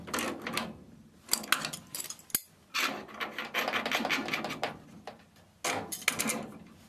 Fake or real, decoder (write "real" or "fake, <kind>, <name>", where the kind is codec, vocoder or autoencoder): real